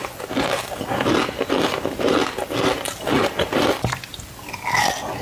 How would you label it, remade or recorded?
recorded